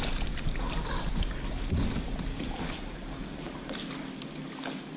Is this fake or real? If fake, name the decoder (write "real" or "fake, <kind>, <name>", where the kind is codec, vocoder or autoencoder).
real